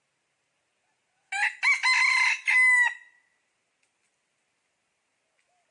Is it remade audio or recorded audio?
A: recorded